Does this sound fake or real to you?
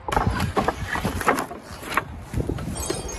real